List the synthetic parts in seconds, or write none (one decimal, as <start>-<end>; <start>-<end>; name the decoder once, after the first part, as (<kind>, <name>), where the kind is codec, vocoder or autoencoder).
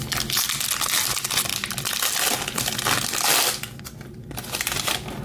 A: none